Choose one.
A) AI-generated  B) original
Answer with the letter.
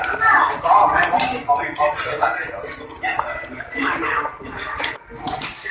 B